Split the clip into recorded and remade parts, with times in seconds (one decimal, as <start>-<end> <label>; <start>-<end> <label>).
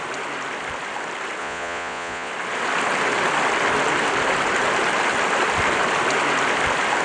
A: 0.0-1.4 recorded; 1.4-2.3 remade; 2.3-7.0 recorded